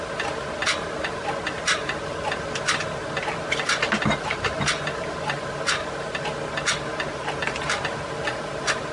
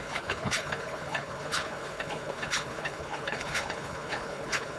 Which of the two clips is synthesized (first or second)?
second